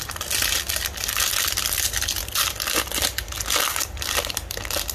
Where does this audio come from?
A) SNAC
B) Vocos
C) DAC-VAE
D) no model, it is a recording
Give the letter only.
D